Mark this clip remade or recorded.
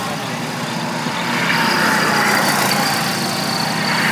recorded